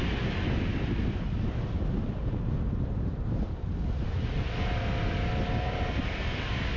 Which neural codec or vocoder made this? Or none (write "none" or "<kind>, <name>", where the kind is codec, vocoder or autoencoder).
none